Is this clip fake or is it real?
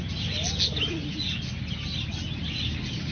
real